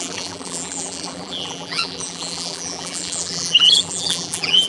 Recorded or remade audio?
remade